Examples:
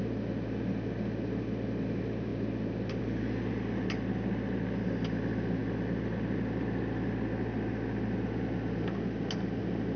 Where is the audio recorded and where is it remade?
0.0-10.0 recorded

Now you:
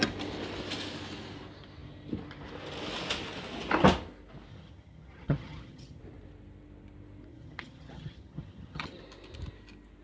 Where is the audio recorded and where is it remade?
0.0-4.5 recorded; 4.5-6.0 remade; 6.0-7.3 recorded; 7.3-9.0 remade; 9.0-10.0 recorded